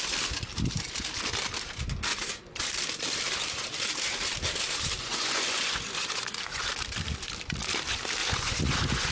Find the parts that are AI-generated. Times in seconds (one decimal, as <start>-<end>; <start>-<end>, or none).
2.1-2.6; 5.0-6.7; 8.2-9.1

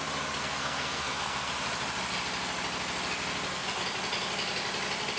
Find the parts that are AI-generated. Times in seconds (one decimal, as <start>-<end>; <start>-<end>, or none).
0.4-1.5